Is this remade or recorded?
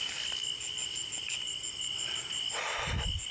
recorded